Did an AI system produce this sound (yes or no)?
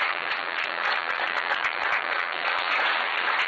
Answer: yes